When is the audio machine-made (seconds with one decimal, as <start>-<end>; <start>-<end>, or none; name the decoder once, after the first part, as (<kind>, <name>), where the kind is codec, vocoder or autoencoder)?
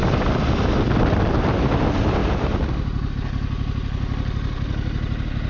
0.0-1.8 (vocoder, BigVGAN v2); 2.2-3.1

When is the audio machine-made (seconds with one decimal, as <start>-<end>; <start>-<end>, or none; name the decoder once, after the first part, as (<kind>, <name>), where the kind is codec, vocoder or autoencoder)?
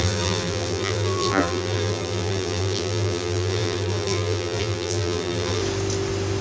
0.0-5.6 (vocoder, BigVGAN v2)